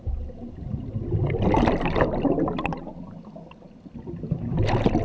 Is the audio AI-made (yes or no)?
no